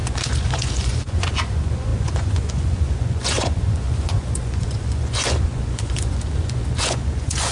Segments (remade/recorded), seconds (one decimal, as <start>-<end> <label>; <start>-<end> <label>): 0.0-7.5 remade